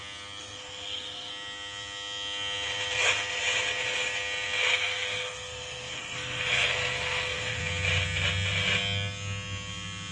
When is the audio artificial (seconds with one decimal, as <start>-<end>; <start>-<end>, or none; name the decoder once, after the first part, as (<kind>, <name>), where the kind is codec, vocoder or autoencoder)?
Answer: 0.4-1.3 (codec, SNAC); 4.7-7.6